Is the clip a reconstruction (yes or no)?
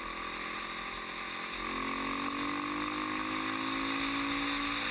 no